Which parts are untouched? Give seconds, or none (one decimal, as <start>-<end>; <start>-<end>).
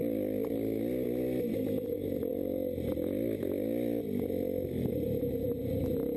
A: 0.0-6.2